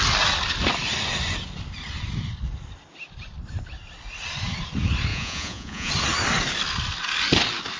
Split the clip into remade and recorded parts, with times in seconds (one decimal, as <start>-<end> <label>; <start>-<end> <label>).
0.0-5.1 recorded; 5.1-5.9 remade; 5.9-7.8 recorded